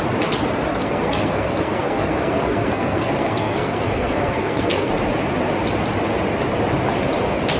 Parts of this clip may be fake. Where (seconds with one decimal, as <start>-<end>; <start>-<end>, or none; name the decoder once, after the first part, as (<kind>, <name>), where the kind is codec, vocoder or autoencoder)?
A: 0.7-4.9 (codec, SNAC)